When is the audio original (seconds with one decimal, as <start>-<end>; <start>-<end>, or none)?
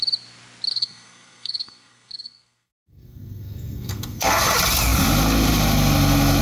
0.0-0.7; 4.5-6.4